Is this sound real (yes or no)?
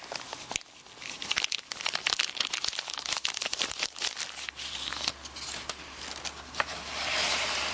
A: yes